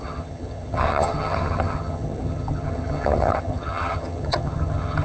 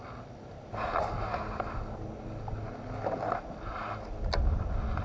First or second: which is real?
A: second